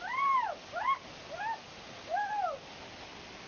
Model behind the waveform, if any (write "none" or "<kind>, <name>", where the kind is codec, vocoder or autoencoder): none